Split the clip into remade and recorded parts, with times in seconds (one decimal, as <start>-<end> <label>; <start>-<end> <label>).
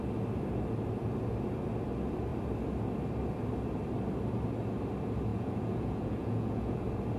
0.0-5.3 recorded; 5.3-6.8 remade; 6.8-7.2 recorded